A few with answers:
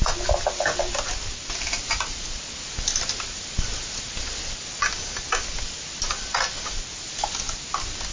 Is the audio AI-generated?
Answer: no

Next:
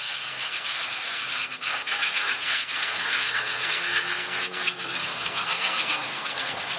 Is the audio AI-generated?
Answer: yes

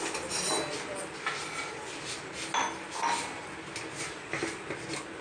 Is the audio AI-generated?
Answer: no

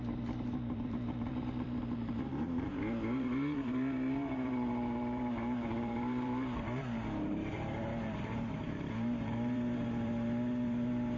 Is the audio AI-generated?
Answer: yes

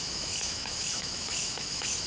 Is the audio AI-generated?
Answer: yes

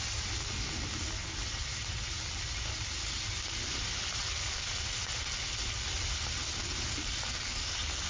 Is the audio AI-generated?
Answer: no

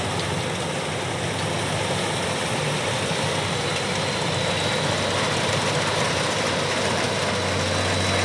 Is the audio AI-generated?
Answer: no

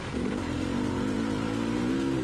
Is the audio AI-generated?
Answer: no